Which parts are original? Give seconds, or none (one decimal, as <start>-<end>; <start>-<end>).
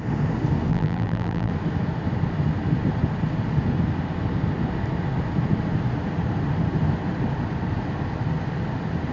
0.0-0.7; 1.5-9.1